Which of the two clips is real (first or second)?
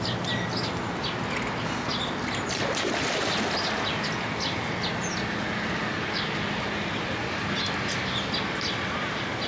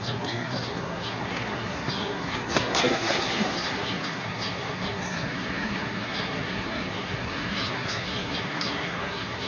first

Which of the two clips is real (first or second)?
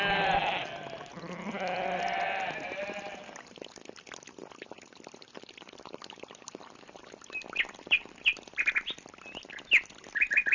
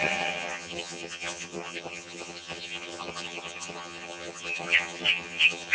first